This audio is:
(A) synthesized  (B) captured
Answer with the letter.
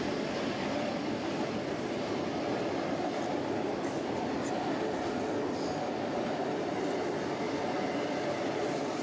B